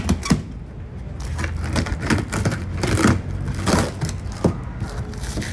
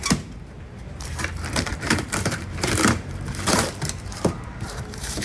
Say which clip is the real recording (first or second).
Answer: first